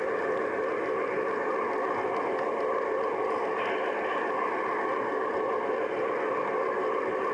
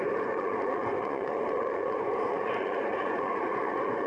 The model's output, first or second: second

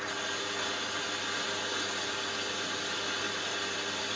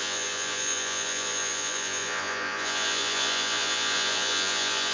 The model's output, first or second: second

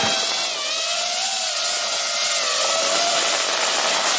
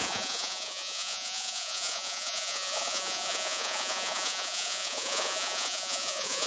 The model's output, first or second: second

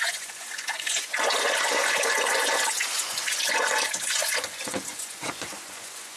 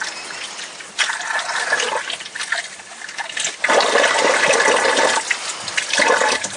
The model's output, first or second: first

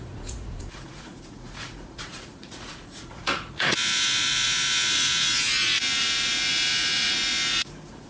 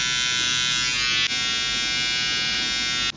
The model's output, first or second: first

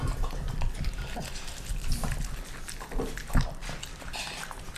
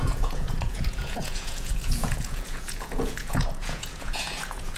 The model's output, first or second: second